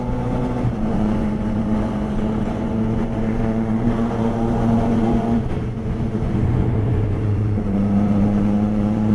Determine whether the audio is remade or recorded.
remade